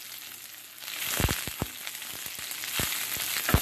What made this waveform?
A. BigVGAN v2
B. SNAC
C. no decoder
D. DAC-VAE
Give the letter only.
C